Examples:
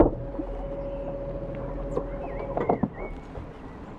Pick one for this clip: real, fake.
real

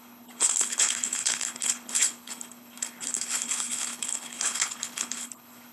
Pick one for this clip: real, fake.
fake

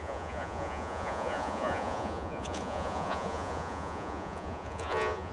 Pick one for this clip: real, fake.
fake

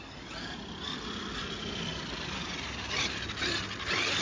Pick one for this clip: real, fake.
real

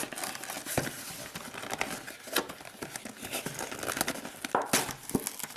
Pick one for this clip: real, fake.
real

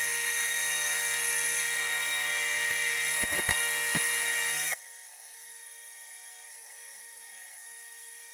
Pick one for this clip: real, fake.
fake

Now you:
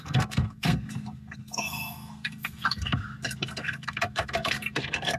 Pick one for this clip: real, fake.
fake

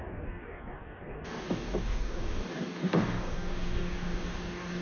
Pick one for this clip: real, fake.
fake